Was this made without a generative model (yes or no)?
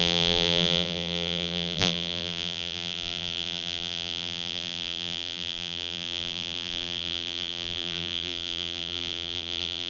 no